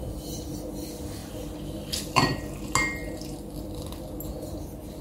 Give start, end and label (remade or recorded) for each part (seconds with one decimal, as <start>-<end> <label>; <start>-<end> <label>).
0.0-1.2 recorded; 1.2-2.4 remade; 2.4-5.0 recorded